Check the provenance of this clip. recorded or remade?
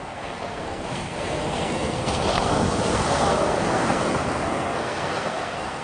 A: remade